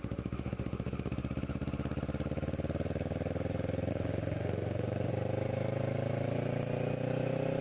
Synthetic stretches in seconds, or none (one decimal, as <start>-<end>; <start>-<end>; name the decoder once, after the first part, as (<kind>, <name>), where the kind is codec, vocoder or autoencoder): 0.0-1.1 (autoencoder, DAC-VAE); 3.9-5.1